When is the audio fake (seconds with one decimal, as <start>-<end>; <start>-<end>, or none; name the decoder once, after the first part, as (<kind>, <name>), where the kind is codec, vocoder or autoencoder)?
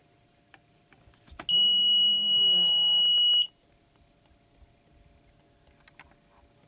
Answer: none